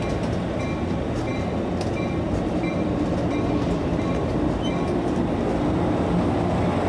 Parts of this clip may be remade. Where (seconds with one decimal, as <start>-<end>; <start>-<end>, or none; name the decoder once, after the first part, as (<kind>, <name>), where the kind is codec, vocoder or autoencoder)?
none